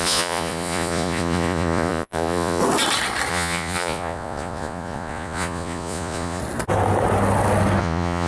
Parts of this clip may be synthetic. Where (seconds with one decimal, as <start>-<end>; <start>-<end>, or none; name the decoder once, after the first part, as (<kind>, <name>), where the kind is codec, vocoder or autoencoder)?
0.0-2.6 (vocoder, Vocos); 3.3-6.4; 7.8-8.3